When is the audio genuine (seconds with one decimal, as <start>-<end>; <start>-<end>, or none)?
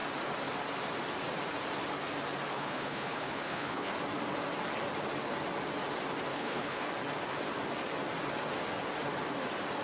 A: 0.0-2.5; 3.9-6.3; 6.9-9.8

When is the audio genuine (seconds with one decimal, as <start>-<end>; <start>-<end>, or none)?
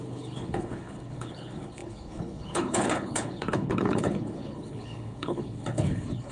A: none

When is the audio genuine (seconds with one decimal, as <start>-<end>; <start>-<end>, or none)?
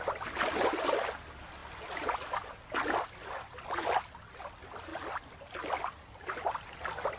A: 0.0-7.2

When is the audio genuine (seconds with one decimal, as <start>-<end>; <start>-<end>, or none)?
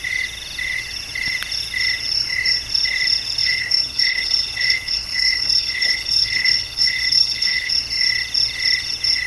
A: 0.0-3.4; 7.7-9.3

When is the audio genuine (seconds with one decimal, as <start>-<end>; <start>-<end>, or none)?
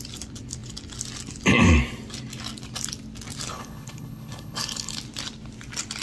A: 0.0-3.5; 5.0-6.0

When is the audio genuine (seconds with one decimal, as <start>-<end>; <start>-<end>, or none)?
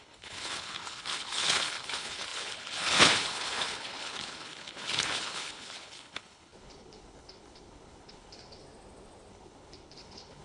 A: 8.6-9.3